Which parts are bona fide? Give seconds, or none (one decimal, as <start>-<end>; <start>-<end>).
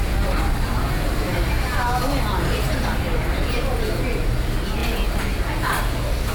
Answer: 0.0-6.3